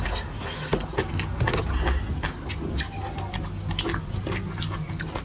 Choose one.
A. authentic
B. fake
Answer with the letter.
A